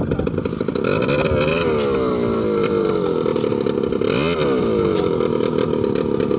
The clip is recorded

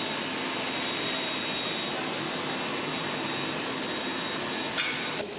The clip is recorded